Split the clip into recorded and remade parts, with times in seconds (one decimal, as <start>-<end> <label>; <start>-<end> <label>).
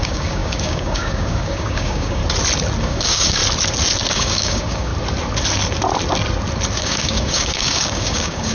0.0-2.2 remade; 2.2-2.8 recorded; 2.8-3.4 remade; 3.4-4.1 recorded; 4.1-4.9 remade; 4.9-6.8 recorded; 6.8-8.5 remade